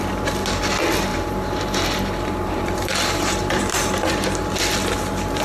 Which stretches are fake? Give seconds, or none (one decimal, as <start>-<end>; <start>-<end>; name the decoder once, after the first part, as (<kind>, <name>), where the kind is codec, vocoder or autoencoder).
1.1-4.1 (vocoder, BigVGAN v2)